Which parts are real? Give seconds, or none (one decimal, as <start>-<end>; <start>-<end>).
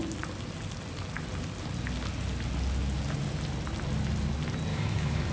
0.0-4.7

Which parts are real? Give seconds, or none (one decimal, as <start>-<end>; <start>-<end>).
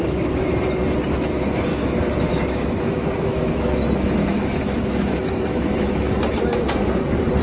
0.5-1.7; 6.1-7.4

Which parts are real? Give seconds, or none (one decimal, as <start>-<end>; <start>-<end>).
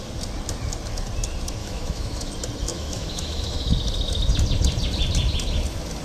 0.0-1.6; 2.3-2.7; 3.7-6.0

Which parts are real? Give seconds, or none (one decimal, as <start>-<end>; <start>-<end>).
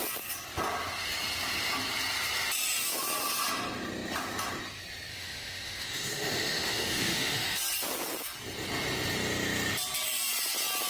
0.0-5.1; 7.6-10.9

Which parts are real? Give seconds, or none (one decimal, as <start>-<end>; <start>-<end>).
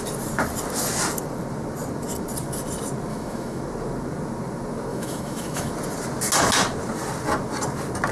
0.0-3.1; 3.6-4.9; 5.7-8.1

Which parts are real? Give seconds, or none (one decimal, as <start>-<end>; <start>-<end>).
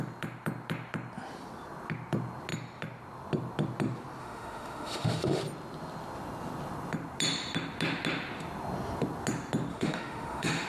0.0-4.2; 5.4-9.7